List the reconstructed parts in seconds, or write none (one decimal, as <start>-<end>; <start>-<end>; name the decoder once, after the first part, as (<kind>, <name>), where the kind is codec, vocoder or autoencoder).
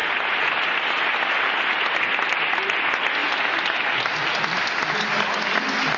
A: none